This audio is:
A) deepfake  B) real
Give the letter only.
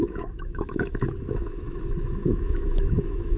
A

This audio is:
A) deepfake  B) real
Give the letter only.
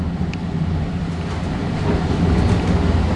B